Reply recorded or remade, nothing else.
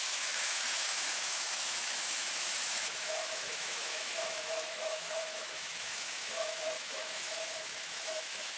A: remade